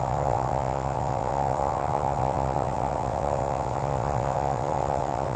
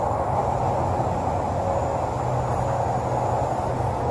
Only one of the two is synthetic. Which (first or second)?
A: first